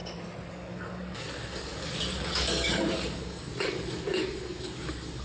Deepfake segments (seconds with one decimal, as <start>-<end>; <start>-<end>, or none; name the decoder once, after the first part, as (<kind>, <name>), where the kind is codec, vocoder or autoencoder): 0.5-5.2 (codec, DAC)